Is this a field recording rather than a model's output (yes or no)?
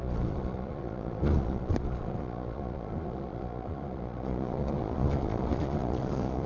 no